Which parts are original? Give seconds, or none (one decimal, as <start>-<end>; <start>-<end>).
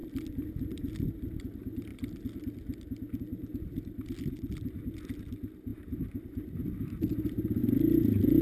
0.0-8.4